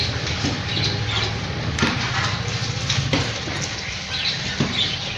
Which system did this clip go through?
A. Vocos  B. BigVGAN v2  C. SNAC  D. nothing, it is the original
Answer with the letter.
D